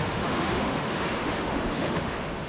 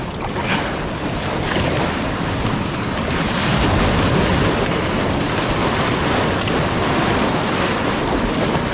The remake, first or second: first